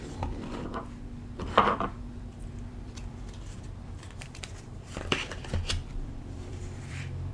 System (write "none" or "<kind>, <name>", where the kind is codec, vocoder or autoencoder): vocoder, BigVGAN v2